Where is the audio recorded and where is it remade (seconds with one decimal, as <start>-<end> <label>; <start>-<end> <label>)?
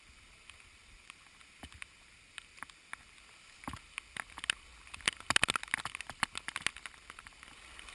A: 0.0-7.9 recorded